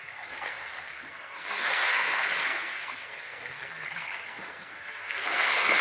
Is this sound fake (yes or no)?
yes